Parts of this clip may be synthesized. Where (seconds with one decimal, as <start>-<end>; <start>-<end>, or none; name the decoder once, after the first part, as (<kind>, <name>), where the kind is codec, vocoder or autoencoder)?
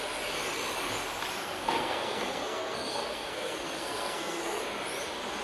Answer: 1.4-4.6 (codec, SNAC)